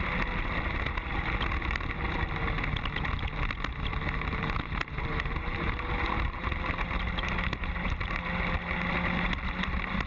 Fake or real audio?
real